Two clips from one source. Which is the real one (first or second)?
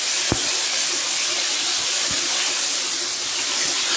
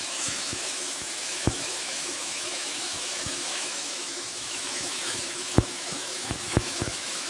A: first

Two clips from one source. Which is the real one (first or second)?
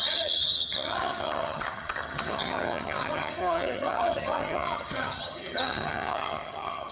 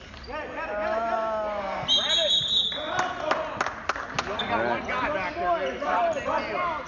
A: second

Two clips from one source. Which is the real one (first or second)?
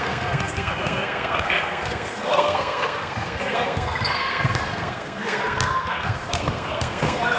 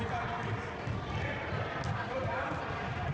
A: second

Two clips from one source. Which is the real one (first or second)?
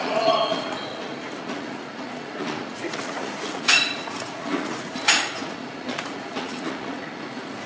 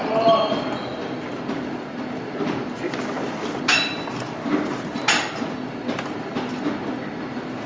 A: second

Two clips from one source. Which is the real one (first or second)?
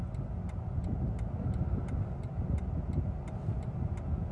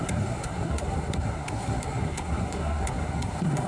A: first